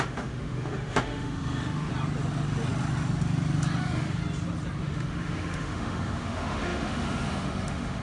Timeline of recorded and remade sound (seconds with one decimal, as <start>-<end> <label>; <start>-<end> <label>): 0.0-1.9 remade; 1.9-3.8 recorded; 3.8-4.2 remade; 4.2-4.8 recorded; 4.8-8.0 remade